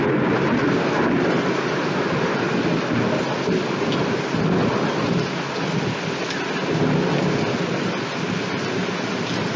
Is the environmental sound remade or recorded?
recorded